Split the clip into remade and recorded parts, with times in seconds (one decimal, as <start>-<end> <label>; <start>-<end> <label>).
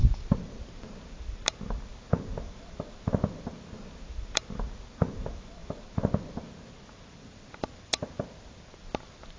0.0-9.4 recorded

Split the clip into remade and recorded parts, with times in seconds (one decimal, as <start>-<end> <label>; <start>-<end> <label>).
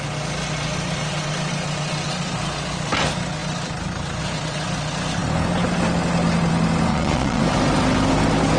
0.0-6.9 recorded; 6.9-7.4 remade; 7.4-8.6 recorded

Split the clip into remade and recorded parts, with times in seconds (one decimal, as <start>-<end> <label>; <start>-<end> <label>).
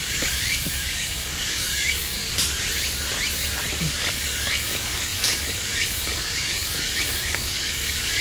0.0-2.2 remade; 2.2-3.8 recorded; 3.8-8.2 remade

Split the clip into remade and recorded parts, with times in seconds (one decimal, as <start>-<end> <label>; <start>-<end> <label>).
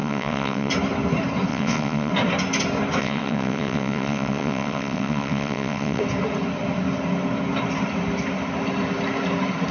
0.0-0.7 remade; 0.7-1.5 recorded; 1.5-2.1 remade; 2.1-3.0 recorded; 3.0-6.0 remade; 6.0-9.7 recorded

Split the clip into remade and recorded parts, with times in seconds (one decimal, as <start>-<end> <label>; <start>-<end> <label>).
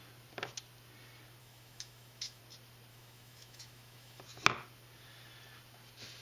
0.0-1.4 recorded; 1.4-2.4 remade; 2.4-2.9 recorded; 2.9-4.2 remade; 4.2-6.2 recorded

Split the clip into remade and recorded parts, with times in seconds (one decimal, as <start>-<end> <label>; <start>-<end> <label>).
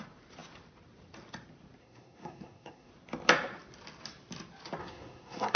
0.0-1.8 recorded; 1.8-2.9 remade; 2.9-4.8 recorded; 4.8-5.6 remade